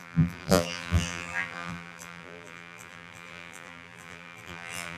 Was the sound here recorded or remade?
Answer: remade